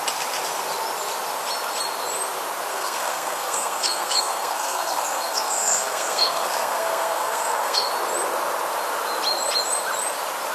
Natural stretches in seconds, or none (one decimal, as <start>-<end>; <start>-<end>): 0.0-2.7; 7.9-10.5